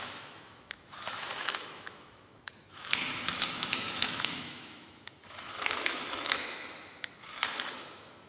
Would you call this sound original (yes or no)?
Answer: no